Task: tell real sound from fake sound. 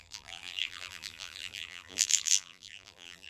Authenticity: fake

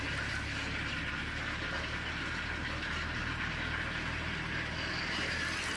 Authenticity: real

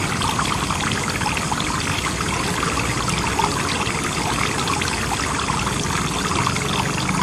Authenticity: real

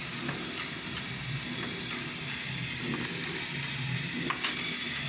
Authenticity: real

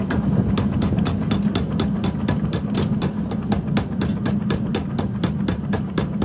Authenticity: real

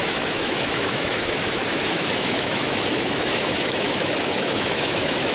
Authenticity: fake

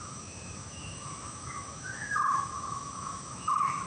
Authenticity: fake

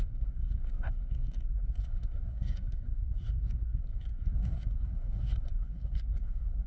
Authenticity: fake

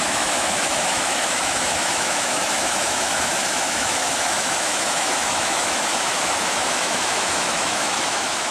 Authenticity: fake